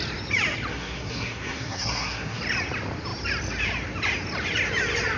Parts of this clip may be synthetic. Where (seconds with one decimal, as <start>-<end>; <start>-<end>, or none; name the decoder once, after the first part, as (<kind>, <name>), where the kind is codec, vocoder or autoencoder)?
0.7-2.4 (codec, SNAC)